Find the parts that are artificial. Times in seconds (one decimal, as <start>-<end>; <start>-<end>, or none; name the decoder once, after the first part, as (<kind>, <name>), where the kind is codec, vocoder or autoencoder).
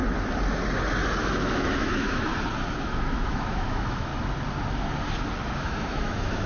1.2-2.3 (autoencoder, DAC-VAE); 2.8-4.1; 5.6-6.5